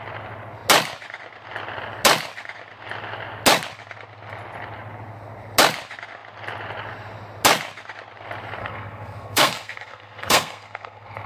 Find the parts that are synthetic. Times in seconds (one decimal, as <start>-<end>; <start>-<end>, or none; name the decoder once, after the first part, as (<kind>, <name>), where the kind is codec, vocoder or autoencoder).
8.6-11.3 (codec, SNAC)